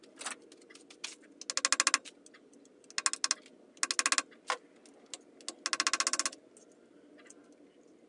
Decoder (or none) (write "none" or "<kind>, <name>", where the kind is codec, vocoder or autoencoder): none